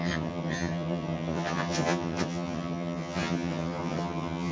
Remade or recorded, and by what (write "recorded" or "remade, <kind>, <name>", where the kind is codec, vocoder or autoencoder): remade, vocoder, HiFi-GAN